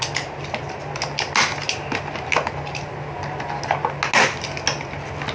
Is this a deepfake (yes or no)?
no